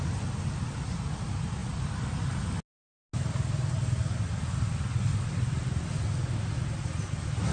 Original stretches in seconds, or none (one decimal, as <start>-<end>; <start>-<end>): 0.0-7.5